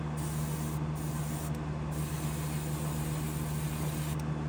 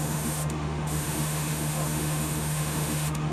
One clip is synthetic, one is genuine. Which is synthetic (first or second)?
second